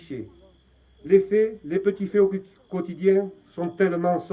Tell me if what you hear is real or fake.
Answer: real